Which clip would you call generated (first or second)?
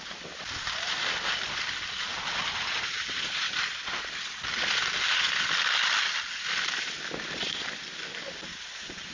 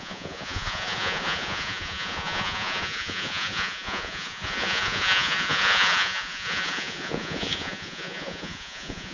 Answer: second